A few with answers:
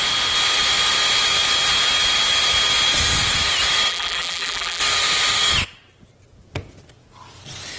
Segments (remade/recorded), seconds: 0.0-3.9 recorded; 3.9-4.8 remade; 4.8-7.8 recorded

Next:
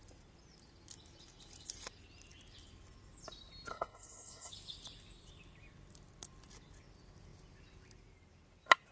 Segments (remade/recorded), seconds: 0.0-3.7 recorded; 3.7-4.5 remade; 4.5-8.9 recorded

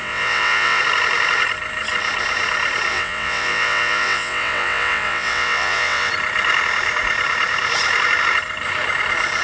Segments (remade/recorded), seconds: 0.0-0.8 remade; 0.8-2.9 recorded; 2.9-6.1 remade; 6.1-9.4 recorded

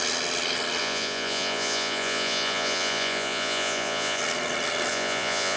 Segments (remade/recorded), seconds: 0.0-0.8 recorded; 0.8-4.2 remade; 4.2-4.9 recorded; 4.9-5.6 remade

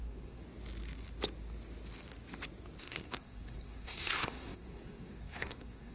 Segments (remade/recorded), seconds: 0.0-0.4 remade; 0.4-2.8 recorded; 2.8-5.9 remade